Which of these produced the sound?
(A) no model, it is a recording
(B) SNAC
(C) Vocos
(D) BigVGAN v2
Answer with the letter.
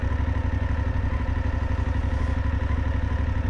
A